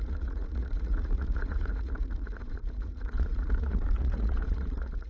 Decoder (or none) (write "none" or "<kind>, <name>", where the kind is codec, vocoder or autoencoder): vocoder, Vocos